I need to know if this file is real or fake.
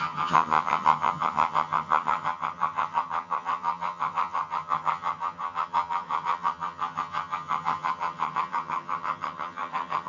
fake